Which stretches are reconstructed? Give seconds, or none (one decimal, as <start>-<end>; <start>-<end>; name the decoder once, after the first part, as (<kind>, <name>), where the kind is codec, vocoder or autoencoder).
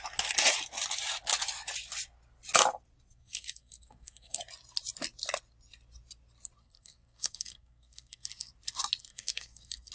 3.1-4.4 (codec, SNAC); 6.6-8.5; 9.0-9.9